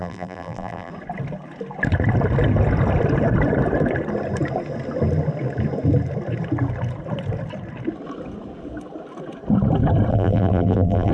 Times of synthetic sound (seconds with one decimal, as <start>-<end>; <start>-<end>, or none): 0.0-0.9; 10.1-11.1